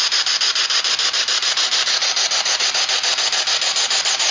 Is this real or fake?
real